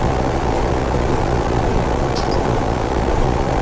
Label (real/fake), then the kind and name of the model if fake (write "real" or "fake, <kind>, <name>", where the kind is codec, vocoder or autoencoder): fake, vocoder, Vocos